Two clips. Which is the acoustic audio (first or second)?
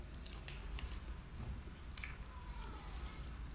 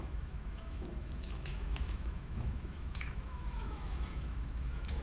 first